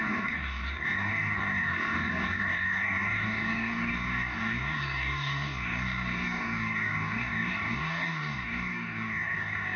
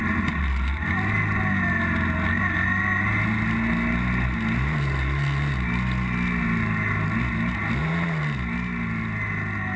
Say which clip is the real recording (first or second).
second